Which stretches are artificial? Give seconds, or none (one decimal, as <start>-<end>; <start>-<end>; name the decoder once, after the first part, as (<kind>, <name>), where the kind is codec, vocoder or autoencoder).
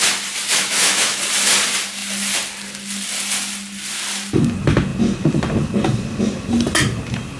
0.5-1.2 (autoencoder, DAC-VAE)